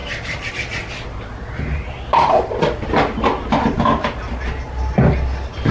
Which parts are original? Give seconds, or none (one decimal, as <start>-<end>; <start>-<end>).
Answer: 0.0-5.7